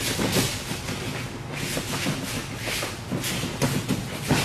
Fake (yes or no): no